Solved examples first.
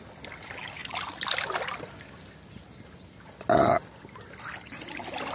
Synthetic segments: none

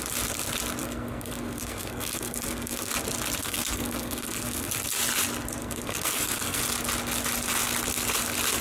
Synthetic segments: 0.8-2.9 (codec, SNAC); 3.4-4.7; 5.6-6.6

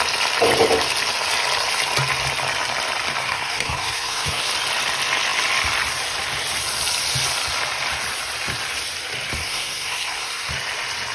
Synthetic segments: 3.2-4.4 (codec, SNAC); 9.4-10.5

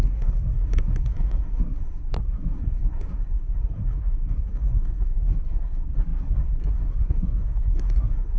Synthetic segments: 0.0-8.4 (codec, SNAC)

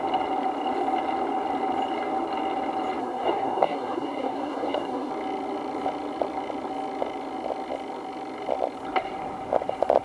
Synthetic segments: 3.0-5.1 (codec, SNAC)

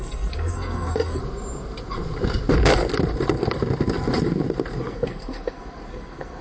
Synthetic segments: 0.0-1.2 (codec, SNAC); 4.9-6.4

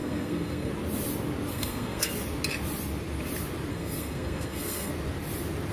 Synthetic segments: 0.0-0.7 (codec, SNAC); 1.5-2.1; 3.7-4.9

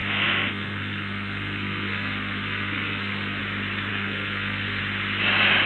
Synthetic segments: 0.0-3.4 (codec, SNAC); 3.9-4.8